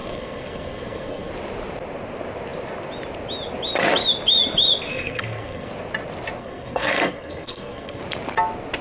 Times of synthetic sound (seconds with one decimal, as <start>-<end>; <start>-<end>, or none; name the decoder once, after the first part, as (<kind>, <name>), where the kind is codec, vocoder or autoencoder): 0.0-1.3 (codec, SNAC); 4.9-5.7; 6.4-8.0